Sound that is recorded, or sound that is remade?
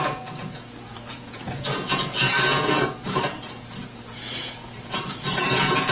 remade